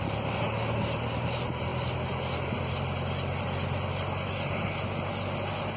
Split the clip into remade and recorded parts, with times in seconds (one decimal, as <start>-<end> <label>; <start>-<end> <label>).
0.0-5.8 recorded